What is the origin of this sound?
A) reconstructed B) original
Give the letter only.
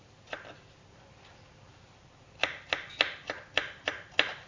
B